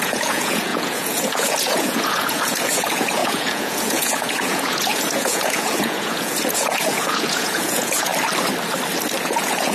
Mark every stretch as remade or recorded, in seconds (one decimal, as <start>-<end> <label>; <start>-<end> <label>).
0.0-8.1 remade; 8.1-9.2 recorded; 9.2-9.7 remade